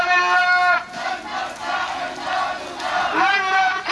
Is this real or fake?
real